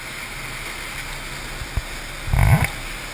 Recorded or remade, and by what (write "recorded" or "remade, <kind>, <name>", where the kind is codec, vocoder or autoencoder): recorded